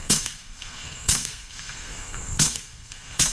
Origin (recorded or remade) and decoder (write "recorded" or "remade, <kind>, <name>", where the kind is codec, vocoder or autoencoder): remade, codec, SNAC